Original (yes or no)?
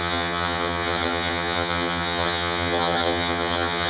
no